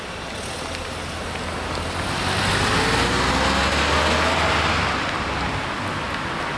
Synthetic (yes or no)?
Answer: no